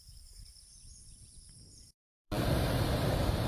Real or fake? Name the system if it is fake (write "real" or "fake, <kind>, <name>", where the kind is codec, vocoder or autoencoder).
fake, vocoder, BigVGAN v2